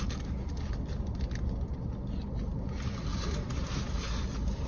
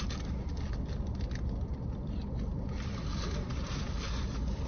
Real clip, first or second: first